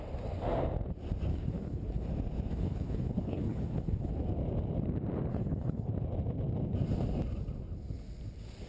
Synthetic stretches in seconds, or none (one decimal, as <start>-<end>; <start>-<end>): 1.3-2.1; 2.5-4.1; 5.3-5.9

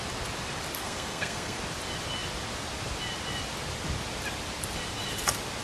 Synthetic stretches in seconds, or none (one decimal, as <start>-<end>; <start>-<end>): 0.8-1.6

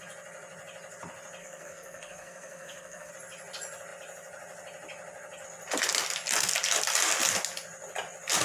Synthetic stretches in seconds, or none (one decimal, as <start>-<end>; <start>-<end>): 1.4-3.1

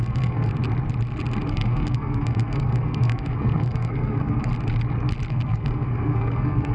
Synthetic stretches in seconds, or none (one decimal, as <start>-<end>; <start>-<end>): 0.0-0.5; 1.5-4.5; 5.3-6.7

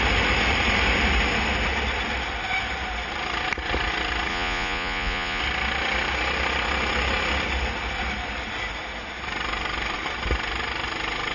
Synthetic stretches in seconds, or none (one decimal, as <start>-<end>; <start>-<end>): 4.3-5.4

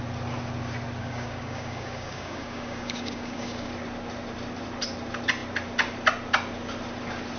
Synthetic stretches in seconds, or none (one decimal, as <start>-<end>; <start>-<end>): 1.0-3.7